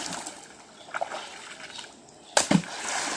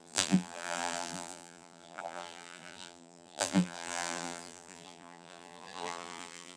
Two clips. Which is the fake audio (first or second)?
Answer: second